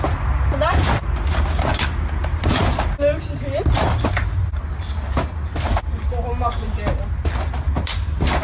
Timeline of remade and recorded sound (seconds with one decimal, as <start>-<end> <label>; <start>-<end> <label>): 0.0-8.4 recorded